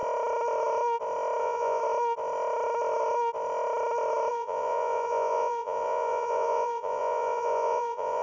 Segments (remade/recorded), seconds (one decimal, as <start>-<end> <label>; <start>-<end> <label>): 0.0-1.4 recorded; 1.4-1.8 remade; 1.8-4.3 recorded; 4.3-8.2 remade